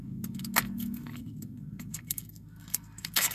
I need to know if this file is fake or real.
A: fake